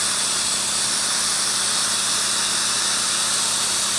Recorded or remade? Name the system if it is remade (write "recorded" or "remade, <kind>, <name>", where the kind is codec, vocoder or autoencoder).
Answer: recorded